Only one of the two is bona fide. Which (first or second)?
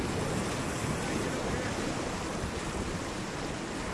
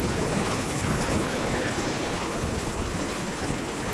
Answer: first